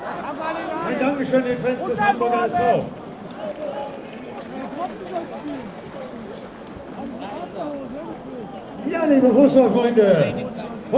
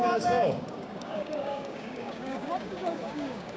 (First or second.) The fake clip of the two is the second